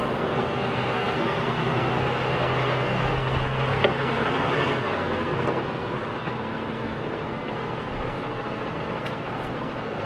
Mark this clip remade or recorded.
remade